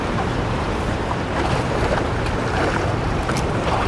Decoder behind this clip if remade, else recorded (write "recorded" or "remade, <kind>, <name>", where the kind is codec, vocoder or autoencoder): remade, vocoder, BigVGAN v2